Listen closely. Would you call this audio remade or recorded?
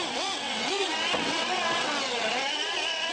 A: remade